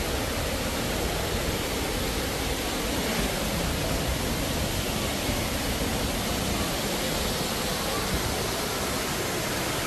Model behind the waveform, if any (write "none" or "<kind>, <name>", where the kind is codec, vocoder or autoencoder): none